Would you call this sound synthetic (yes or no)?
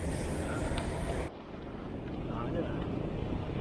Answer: no